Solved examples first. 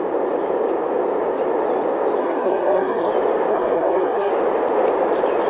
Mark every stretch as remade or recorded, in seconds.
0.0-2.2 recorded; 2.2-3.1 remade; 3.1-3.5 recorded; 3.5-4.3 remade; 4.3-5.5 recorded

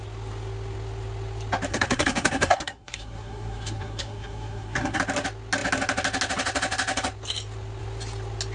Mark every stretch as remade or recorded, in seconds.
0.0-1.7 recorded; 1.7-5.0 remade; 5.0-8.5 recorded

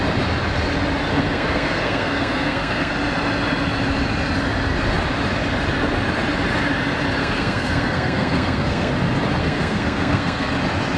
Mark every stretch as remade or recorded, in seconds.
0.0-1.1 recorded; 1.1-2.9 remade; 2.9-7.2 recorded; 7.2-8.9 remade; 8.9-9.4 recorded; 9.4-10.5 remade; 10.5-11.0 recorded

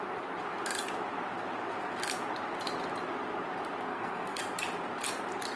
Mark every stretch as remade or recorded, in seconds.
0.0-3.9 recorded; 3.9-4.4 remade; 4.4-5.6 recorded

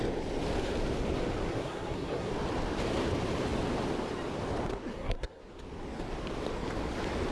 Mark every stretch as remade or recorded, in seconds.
0.0-1.5 recorded; 1.5-2.3 remade; 2.3-4.9 recorded; 4.9-5.4 remade; 5.4-7.3 recorded